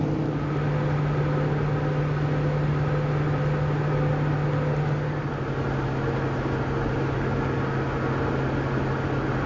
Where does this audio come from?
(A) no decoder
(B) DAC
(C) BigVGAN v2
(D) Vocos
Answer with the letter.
A